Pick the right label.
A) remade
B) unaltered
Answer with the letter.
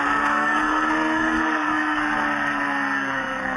A